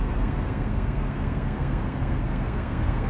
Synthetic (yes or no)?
yes